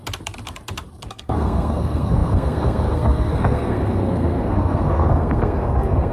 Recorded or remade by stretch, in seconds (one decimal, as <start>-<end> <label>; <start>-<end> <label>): 0.0-1.1 recorded; 1.1-6.1 remade